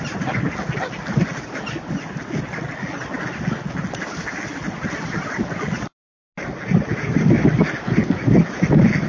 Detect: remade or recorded recorded